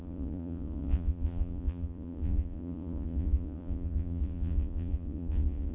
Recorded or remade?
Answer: remade